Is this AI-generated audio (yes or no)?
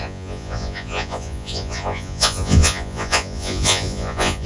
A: yes